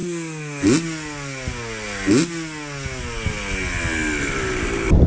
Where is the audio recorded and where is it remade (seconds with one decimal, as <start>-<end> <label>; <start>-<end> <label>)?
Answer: 0.0-5.1 recorded